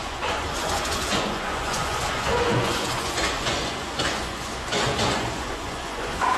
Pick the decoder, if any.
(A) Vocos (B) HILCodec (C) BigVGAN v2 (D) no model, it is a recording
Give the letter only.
A